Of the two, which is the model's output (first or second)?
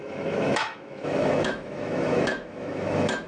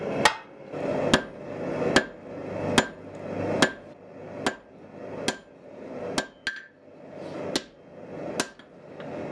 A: first